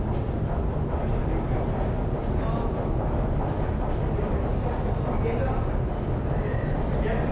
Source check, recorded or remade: recorded